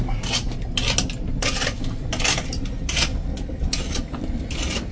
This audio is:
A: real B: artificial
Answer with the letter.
A